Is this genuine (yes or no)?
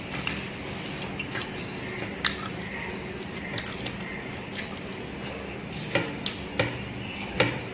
yes